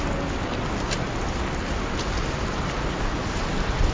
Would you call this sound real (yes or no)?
yes